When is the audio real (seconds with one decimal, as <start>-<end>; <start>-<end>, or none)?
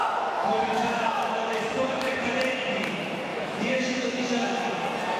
0.0-0.4; 2.3-3.3; 4.7-5.2